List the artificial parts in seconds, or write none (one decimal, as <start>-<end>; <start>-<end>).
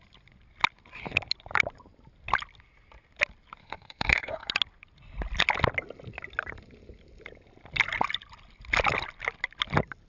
3.6-4.5